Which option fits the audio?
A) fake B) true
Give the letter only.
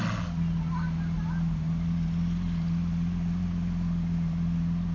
B